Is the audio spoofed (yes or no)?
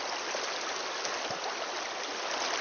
no